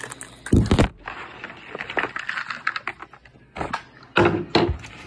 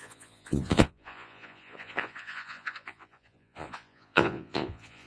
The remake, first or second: second